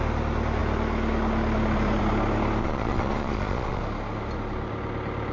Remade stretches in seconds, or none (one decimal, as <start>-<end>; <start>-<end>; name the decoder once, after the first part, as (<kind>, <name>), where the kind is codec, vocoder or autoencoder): 2.6-3.8 (vocoder, Vocos)